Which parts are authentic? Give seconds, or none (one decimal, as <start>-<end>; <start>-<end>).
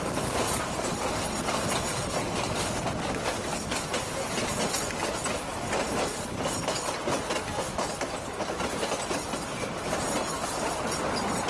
0.0-11.5